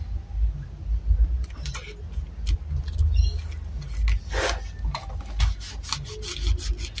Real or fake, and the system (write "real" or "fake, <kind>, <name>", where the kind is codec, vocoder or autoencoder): real